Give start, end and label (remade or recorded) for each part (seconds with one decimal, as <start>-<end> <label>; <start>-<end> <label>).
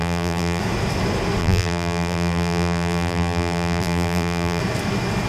0.0-0.6 remade; 0.6-1.4 recorded; 1.4-4.6 remade; 4.6-5.3 recorded